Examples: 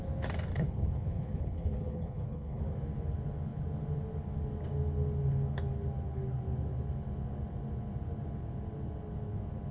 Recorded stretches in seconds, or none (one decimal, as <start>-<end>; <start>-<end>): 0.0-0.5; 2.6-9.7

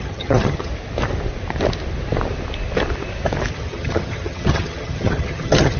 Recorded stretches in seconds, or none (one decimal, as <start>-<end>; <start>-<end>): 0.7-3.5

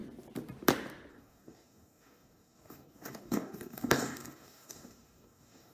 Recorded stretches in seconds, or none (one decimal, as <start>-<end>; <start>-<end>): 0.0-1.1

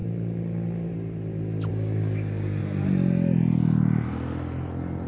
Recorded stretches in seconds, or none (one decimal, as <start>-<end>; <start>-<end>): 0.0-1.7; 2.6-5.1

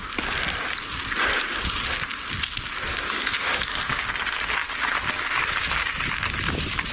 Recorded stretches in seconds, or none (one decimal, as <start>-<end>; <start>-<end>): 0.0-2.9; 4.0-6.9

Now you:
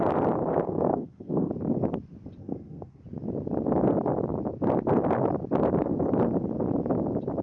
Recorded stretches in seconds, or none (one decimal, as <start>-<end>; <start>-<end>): 0.0-0.5; 1.5-2.4; 3.0-7.4